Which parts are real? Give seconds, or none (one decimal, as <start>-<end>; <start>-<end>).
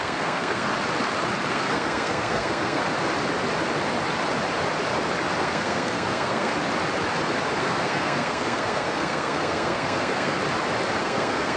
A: 0.7-1.5; 2.8-5.4; 6.5-7.6; 10.4-11.0